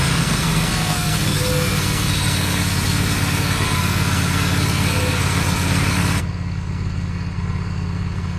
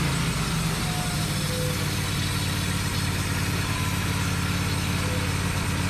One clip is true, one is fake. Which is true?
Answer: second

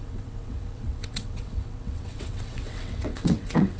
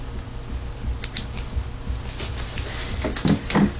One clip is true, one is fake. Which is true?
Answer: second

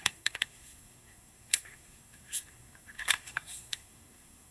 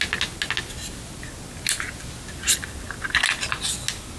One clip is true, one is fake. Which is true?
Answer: second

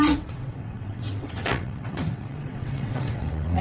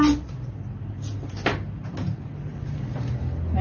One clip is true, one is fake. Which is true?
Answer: second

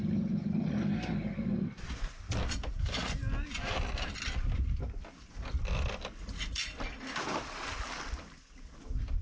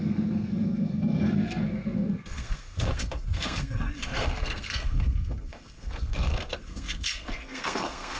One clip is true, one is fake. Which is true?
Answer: first